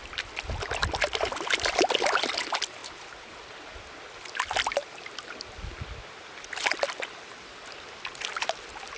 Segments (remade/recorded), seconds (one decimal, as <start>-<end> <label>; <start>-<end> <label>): 0.0-9.0 recorded